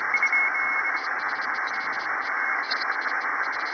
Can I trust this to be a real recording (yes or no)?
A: yes